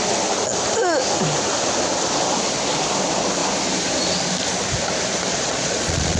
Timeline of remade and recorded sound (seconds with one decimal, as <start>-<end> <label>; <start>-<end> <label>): 0.0-5.3 recorded; 5.3-6.2 remade

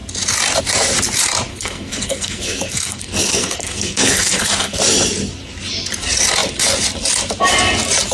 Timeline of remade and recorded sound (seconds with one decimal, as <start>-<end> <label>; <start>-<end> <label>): 0.0-1.5 recorded; 1.5-4.8 remade; 4.8-8.1 recorded

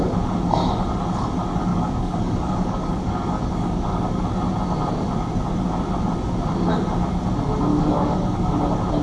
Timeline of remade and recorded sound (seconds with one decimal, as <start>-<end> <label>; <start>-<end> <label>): 0.0-1.7 recorded; 1.7-4.2 remade; 4.2-7.7 recorded; 7.7-8.5 remade; 8.5-9.0 recorded

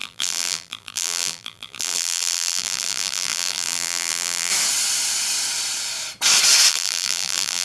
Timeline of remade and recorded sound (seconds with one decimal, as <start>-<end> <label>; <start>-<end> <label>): 0.0-4.5 remade; 4.5-6.7 recorded; 6.7-7.6 remade

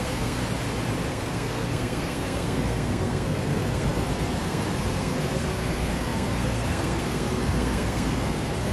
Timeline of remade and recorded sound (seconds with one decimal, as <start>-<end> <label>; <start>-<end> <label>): 0.0-0.4 remade; 0.4-1.1 recorded; 1.1-8.7 remade

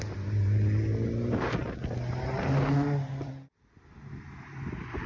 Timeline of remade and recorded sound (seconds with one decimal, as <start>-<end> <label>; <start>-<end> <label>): 0.0-5.1 recorded

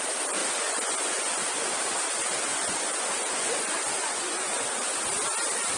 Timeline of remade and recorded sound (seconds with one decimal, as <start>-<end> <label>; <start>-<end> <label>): 0.0-0.4 recorded; 0.4-1.7 remade; 1.7-2.5 recorded; 2.5-5.0 remade; 5.0-5.8 recorded